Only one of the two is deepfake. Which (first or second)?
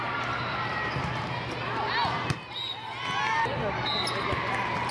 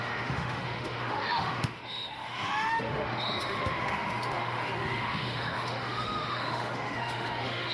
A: second